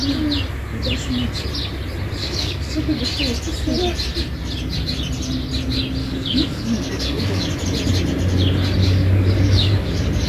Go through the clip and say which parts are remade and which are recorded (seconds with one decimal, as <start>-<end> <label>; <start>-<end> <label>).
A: 0.0-2.2 recorded; 2.2-3.0 remade; 3.0-6.0 recorded; 6.0-7.5 remade; 7.5-8.8 recorded; 8.8-10.3 remade

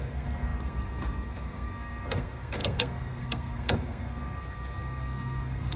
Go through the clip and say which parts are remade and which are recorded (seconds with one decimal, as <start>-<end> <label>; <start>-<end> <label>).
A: 0.0-5.8 remade

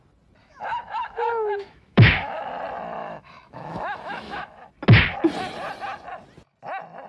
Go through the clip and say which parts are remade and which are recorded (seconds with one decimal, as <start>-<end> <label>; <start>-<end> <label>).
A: 0.0-0.4 recorded; 0.4-2.5 remade; 2.5-3.0 recorded; 3.0-4.7 remade; 4.7-7.1 recorded